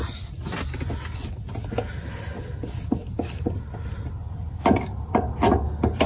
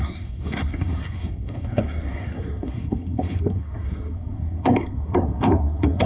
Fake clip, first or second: second